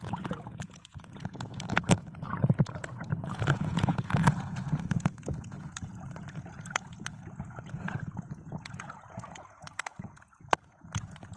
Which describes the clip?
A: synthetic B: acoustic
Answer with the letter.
A